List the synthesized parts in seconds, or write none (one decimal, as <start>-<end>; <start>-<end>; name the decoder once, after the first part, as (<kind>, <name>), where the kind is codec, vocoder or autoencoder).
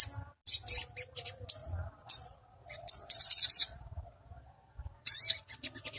1.6-5.2 (vocoder, Vocos)